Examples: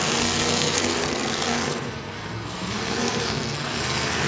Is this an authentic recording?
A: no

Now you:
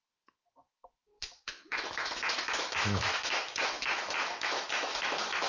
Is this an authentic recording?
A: no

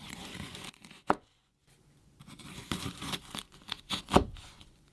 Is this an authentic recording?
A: no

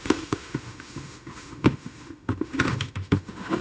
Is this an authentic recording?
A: no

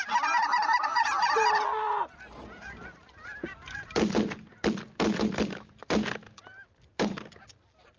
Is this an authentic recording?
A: no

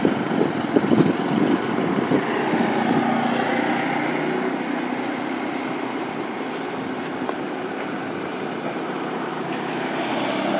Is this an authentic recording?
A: yes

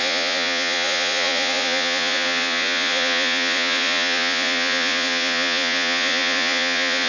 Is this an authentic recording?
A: no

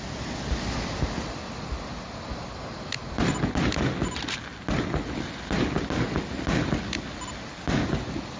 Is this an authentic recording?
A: yes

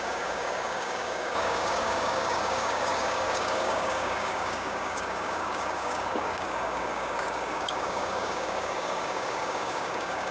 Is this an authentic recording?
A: no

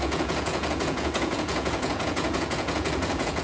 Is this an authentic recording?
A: no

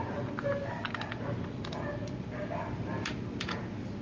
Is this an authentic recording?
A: yes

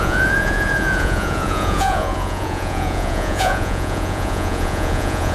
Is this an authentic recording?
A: no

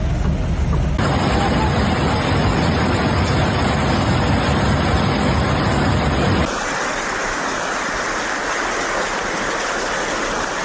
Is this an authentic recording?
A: yes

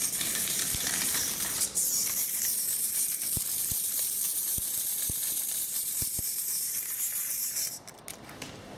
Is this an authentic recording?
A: no